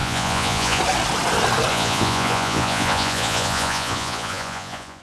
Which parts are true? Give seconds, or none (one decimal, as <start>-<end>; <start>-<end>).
0.8-1.7

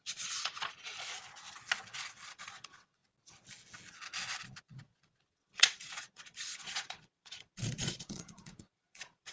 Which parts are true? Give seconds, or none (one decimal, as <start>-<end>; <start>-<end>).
0.9-2.3; 3.0-4.6

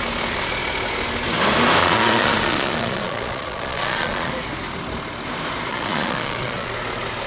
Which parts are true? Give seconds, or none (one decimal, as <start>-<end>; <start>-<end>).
0.0-1.8; 4.3-5.7; 6.7-7.3